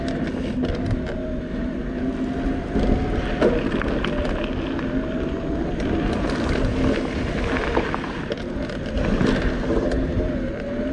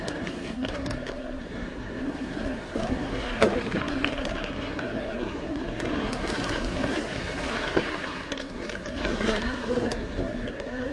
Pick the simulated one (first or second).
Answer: second